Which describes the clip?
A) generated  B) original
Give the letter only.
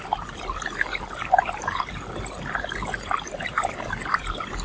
A